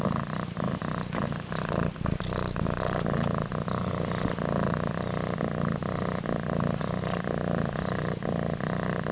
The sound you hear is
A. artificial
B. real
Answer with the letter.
B